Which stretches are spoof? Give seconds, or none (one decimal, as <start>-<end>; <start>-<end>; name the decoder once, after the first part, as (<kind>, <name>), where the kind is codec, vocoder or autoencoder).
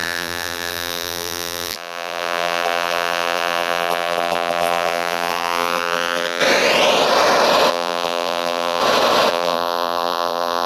0.0-6.4 (vocoder, BigVGAN v2); 7.7-8.8; 9.3-10.7